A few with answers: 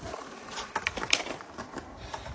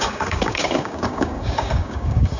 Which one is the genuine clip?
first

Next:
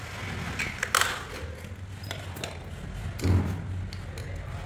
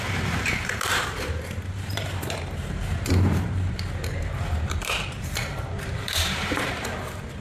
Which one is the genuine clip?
first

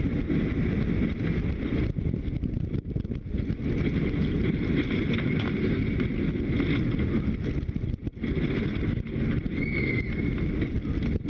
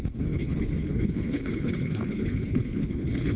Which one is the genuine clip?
first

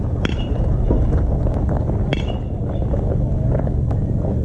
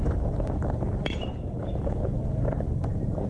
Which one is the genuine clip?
first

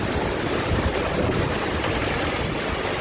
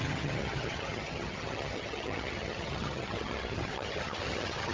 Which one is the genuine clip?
first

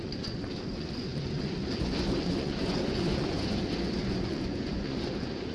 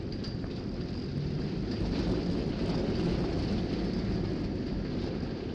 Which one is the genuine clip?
second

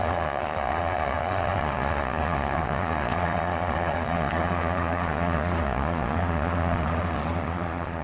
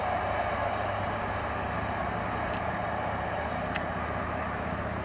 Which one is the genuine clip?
second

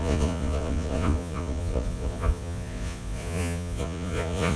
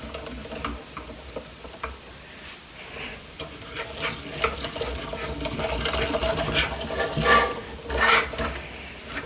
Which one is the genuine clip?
second